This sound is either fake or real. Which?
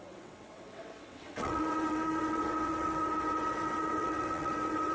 fake